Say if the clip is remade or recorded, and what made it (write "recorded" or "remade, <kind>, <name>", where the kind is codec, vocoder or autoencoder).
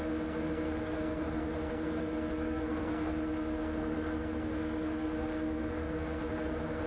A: remade, codec, SNAC